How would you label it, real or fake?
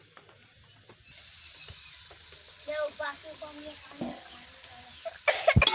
real